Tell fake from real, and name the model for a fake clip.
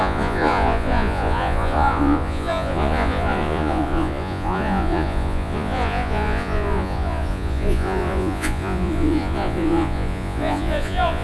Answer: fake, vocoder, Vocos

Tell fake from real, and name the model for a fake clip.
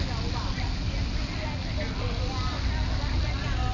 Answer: real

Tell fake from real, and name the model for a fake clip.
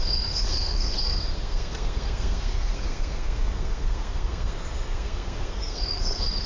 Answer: fake, codec, SNAC